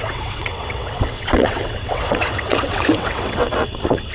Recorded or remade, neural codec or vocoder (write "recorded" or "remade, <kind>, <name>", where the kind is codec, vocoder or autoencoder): remade, vocoder, WaveNeXt